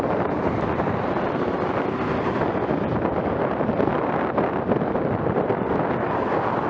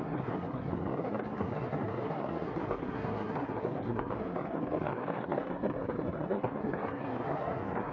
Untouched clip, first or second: first